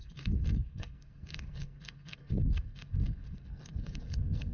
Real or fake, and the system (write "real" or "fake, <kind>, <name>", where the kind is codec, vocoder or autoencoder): fake, codec, SNAC